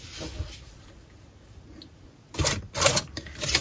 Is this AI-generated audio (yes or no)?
no